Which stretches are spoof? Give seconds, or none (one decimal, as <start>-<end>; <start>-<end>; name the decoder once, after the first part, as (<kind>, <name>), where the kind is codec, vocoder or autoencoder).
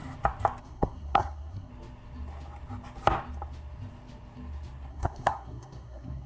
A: 0.6-1.7 (codec, SNAC); 4.9-6.3